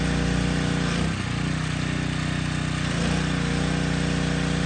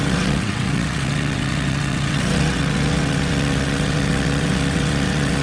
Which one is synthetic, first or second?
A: second